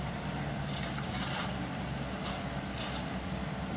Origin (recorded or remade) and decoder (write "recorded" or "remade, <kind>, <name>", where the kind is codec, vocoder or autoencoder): recorded